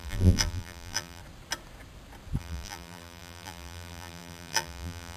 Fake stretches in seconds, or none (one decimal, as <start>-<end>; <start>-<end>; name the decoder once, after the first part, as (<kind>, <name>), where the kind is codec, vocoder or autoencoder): 0.0-1.2 (vocoder, BigVGAN v2); 2.4-5.2